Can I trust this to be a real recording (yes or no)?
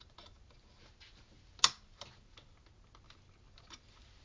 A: yes